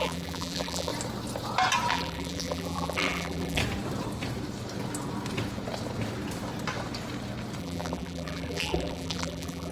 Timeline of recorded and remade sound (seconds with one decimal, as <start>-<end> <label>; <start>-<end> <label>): 0.0-0.9 remade; 0.9-1.9 recorded; 1.9-3.6 remade; 3.6-7.6 recorded; 7.6-9.7 remade